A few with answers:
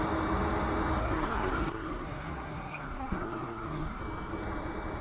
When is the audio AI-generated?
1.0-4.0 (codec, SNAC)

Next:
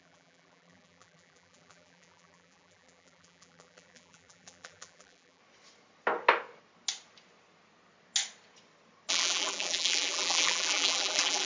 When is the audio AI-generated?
0.0-5.4 (vocoder, BigVGAN v2); 9.1-11.5

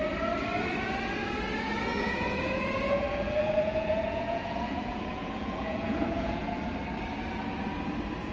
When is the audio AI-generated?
1.9-6.6 (vocoder, Vocos)

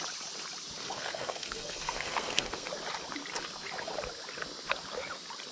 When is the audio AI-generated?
0.8-2.7 (codec, SNAC)

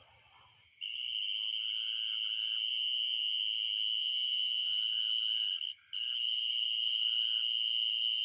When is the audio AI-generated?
2.7-3.4 (vocoder, Vocos); 4.0-4.8